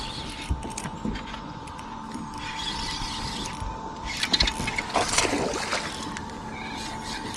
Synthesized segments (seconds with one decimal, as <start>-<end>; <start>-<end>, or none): 0.7-1.9